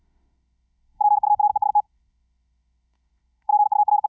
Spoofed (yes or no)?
yes